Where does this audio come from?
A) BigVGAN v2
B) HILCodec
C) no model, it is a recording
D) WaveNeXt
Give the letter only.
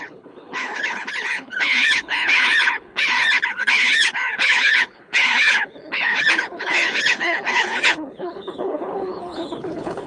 B